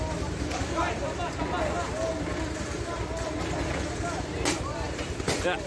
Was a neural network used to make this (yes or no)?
no